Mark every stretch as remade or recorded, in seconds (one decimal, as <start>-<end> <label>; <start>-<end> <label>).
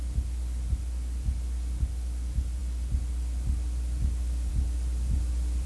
0.0-5.7 recorded